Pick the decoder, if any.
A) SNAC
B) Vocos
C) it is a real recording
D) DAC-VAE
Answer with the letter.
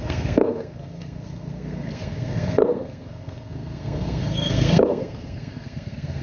A